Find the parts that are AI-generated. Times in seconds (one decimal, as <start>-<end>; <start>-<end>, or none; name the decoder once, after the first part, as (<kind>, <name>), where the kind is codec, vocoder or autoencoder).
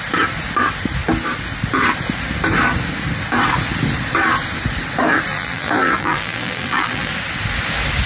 5.3-7.1 (vocoder, BigVGAN v2)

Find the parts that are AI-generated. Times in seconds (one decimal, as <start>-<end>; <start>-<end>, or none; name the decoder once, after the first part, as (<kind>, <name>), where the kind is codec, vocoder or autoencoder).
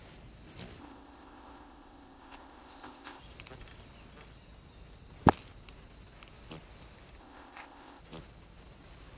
0.8-3.2 (codec, ZipCodec); 7.2-8.0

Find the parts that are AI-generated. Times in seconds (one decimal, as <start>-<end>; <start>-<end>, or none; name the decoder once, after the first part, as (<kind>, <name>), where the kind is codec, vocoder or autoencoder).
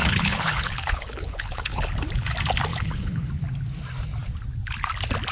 0.0-1.9 (codec, HILCodec); 2.7-3.3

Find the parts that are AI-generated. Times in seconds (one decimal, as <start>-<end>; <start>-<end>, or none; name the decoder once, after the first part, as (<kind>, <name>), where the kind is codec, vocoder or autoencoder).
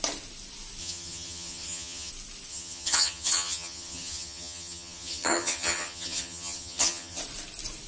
0.8-2.1 (vocoder, HiFi-GAN); 2.5-7.2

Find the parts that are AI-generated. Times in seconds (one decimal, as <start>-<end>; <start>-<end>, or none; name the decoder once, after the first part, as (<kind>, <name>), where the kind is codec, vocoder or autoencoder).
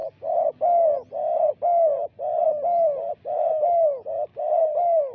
none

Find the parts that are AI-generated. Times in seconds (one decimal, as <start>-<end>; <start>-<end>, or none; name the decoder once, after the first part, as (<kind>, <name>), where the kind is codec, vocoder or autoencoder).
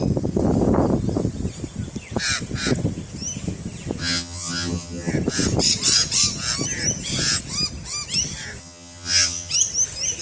4.0-5.1 (vocoder, HiFi-GAN); 8.6-9.5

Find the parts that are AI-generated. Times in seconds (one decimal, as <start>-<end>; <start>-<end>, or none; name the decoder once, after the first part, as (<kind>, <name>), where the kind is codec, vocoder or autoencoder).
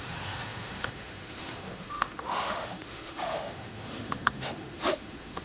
0.0-5.4 (autoencoder, DAC-VAE)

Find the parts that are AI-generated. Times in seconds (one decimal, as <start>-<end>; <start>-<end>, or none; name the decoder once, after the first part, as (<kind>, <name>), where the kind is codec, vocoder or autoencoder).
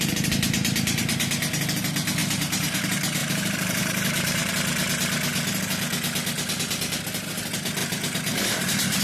2.2-2.8 (vocoder, BigVGAN v2); 3.2-4.5; 7.8-9.0